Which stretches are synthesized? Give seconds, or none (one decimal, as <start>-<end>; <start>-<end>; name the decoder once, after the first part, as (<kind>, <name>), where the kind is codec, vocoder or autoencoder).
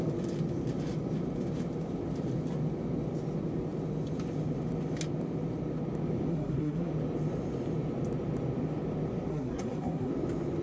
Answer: 6.3-6.9 (codec, SNAC); 9.3-10.1